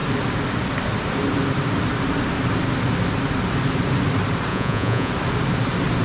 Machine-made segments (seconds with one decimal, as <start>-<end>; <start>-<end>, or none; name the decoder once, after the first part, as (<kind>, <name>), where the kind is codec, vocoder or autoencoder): 4.5-5.1 (vocoder, Vocos)